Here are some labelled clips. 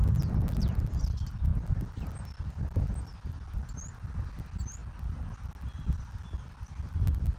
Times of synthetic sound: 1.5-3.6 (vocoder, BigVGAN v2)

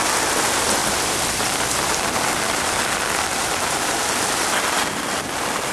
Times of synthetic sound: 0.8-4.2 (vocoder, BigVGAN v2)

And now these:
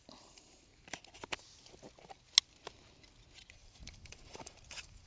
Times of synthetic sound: 0.0-0.7 (vocoder, BigVGAN v2); 3.5-5.1

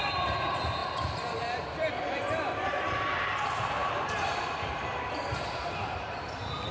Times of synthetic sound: 0.8-2.0 (vocoder, BigVGAN v2); 3.8-4.5

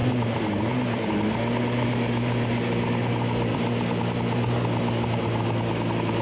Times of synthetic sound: 0.0-1.1 (vocoder, BigVGAN v2); 3.5-5.4

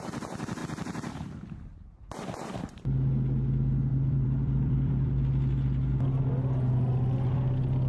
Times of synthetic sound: 3.9-5.1 (vocoder, BigVGAN v2)

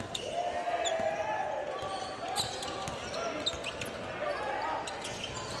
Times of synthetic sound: none

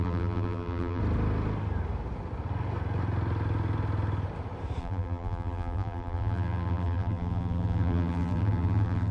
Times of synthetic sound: 0.0-1.0 (vocoder, BigVGAN v2); 4.8-9.1